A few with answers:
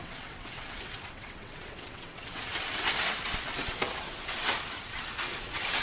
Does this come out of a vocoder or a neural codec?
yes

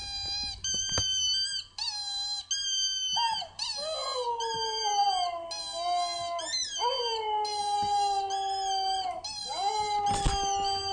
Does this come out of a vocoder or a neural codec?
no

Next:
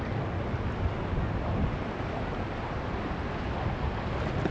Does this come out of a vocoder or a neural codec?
no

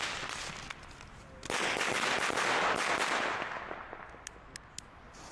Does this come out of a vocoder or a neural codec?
no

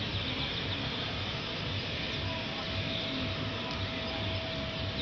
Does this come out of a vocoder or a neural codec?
no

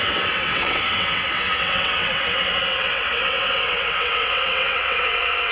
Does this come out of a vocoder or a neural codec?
yes